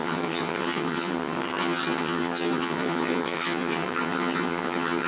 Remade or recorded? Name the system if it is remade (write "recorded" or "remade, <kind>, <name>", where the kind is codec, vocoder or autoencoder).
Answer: remade, vocoder, HiFi-GAN